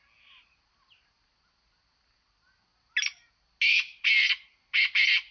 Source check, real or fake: real